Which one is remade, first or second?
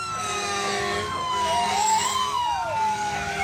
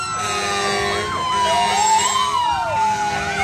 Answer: first